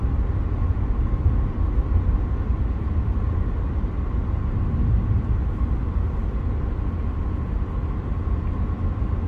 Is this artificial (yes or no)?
no